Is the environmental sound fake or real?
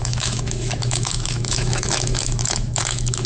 fake